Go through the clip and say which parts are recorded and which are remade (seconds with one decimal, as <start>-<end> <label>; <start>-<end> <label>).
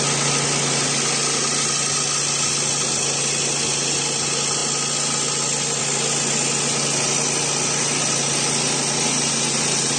0.0-10.0 recorded